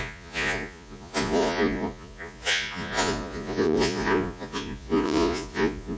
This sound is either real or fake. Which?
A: fake